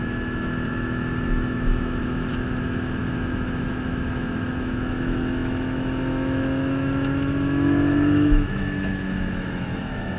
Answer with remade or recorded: remade